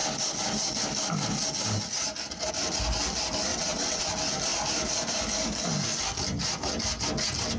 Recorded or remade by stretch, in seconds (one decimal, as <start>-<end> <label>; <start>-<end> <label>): 0.0-3.5 recorded; 3.5-4.0 remade; 4.0-7.6 recorded